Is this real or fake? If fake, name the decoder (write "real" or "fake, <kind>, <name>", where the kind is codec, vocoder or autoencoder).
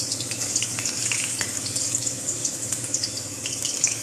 fake, codec, DAC